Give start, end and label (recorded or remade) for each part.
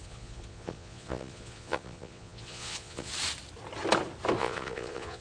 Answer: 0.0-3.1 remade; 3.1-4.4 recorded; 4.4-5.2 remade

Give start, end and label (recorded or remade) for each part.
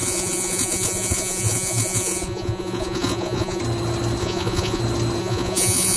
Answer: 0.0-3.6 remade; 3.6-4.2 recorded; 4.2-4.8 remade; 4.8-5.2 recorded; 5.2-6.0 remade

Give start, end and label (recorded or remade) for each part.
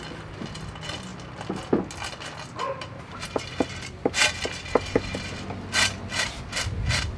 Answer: 0.0-7.2 recorded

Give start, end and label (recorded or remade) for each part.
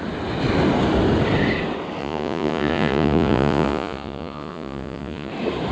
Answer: 0.0-2.0 recorded; 2.0-5.3 remade; 5.3-5.7 recorded